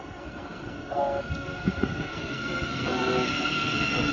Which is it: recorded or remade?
remade